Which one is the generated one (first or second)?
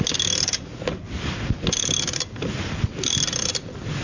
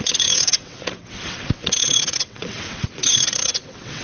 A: second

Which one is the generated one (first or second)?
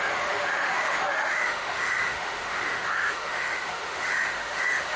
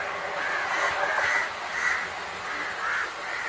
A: first